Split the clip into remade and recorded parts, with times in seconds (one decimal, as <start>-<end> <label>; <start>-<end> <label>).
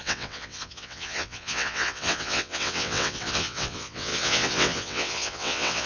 0.0-5.9 remade